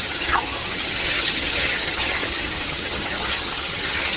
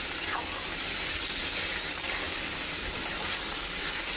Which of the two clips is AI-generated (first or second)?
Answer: first